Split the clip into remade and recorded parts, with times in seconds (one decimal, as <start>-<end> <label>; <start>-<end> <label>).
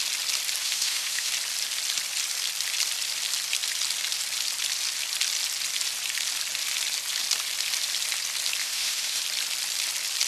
0.0-0.6 recorded; 0.6-1.3 remade; 1.3-8.6 recorded; 8.6-9.2 remade; 9.2-10.3 recorded